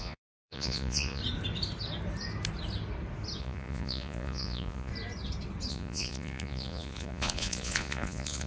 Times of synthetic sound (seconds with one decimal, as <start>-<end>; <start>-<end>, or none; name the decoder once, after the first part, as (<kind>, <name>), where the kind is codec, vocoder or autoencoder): 0.0-1.2 (vocoder, Vocos); 3.4-4.9; 5.7-8.5